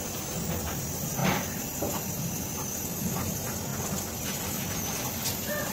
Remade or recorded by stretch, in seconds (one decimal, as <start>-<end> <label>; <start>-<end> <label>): 0.0-5.7 recorded